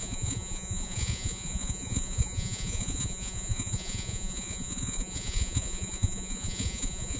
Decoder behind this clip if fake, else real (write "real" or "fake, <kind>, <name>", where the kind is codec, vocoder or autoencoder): fake, vocoder, Vocos